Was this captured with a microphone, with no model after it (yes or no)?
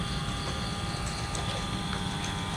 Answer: yes